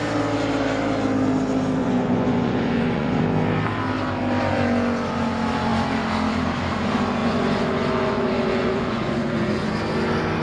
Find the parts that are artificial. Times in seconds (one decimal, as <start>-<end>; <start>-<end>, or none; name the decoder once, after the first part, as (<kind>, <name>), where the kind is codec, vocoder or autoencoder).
1.8-3.2 (vocoder, Vocos); 7.2-9.7